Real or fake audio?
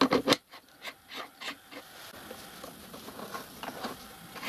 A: real